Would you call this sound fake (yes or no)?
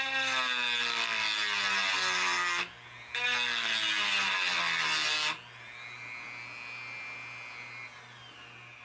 no